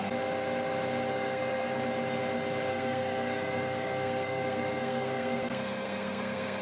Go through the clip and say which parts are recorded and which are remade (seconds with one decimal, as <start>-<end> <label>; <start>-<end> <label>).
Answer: 0.0-1.1 recorded; 1.1-1.8 remade; 1.8-2.7 recorded; 2.7-6.6 remade